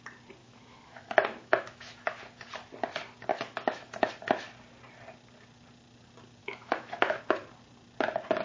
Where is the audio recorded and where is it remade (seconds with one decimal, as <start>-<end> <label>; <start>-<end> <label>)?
0.0-0.4 recorded; 0.4-2.2 remade; 2.2-3.3 recorded; 3.3-4.1 remade; 4.1-6.4 recorded; 6.4-7.2 remade; 7.2-8.4 recorded